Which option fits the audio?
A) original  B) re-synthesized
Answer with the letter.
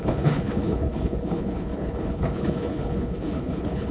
B